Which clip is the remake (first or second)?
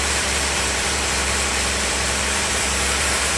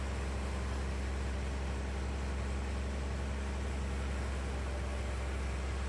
first